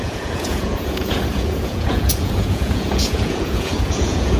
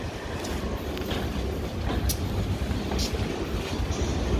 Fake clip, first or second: first